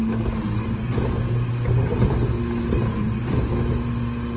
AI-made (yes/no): no